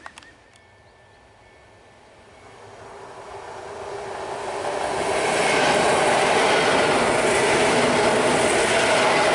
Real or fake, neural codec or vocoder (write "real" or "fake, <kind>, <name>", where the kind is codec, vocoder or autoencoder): real